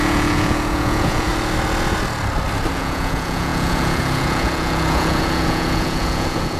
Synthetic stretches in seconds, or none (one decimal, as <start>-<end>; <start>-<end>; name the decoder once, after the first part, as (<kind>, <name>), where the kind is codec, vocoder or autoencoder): 0.0-1.3 (vocoder, Vocos); 2.7-6.6